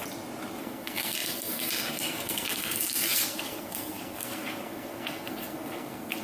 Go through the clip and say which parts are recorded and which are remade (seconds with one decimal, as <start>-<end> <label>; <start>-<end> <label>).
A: 0.0-0.6 recorded; 0.6-6.2 remade